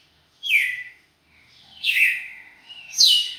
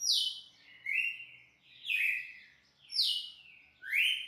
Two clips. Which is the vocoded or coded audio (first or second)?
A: first